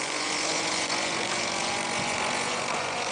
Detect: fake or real fake